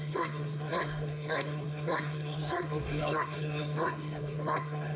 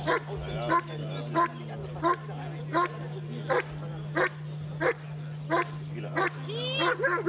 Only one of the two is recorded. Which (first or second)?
second